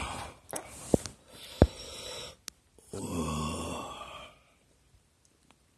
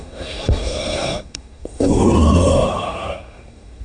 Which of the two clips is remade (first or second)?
second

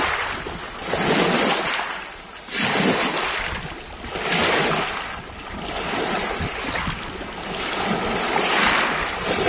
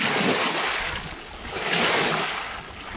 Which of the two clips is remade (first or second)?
second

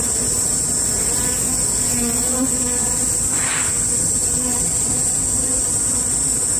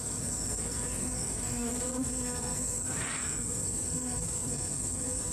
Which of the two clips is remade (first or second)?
second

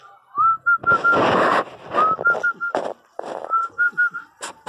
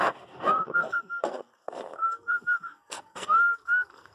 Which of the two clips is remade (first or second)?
second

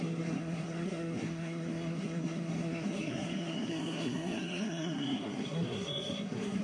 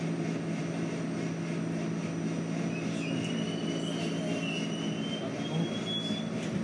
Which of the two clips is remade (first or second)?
first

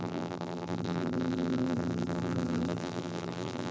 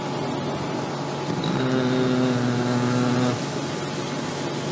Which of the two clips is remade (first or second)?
first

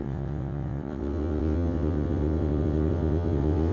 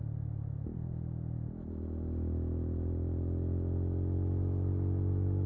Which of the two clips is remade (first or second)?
first